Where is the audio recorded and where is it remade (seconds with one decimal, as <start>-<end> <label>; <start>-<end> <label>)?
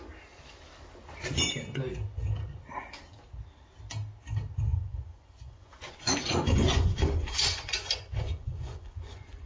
0.0-4.7 recorded; 4.7-9.5 remade